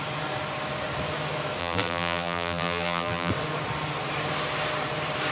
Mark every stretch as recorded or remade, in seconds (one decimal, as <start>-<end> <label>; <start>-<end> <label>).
0.0-1.6 recorded; 1.6-3.3 remade; 3.3-5.3 recorded